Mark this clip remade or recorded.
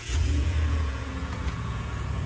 remade